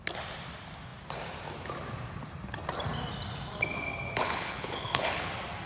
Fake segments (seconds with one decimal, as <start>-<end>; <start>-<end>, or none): 4.2-5.3

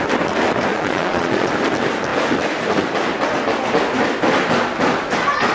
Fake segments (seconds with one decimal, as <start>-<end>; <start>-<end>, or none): 0.7-1.5

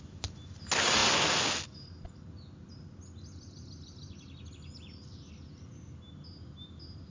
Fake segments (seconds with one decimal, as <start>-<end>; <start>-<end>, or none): none

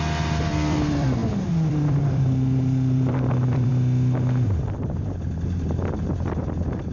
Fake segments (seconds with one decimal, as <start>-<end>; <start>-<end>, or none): 0.0-3.7

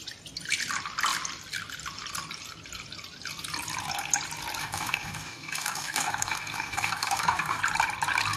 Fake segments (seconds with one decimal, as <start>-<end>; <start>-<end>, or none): 4.6-7.6

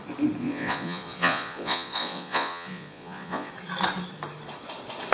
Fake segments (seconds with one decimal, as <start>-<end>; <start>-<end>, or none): 0.4-3.5

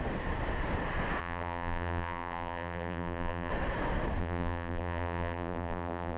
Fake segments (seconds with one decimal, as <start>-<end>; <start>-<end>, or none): 1.2-3.5; 4.2-6.2